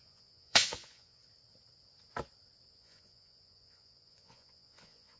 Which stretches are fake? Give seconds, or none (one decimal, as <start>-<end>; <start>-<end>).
0.0-1.2; 2.7-5.2